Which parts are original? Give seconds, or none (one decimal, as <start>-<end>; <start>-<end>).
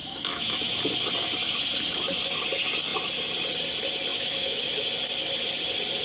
0.6-4.1; 4.7-6.0